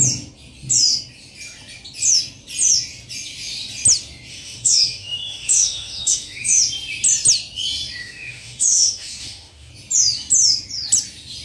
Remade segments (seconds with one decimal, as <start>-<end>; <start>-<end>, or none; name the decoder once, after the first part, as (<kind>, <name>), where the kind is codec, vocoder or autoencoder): 4.3-6.6 (autoencoder, DAC-VAE); 8.0-9.7